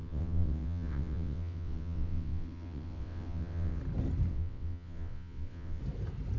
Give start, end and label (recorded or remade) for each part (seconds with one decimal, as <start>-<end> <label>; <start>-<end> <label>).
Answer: 0.0-3.8 remade; 3.8-4.3 recorded; 4.3-5.8 remade; 5.8-6.4 recorded